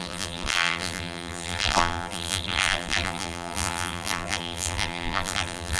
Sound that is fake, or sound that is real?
fake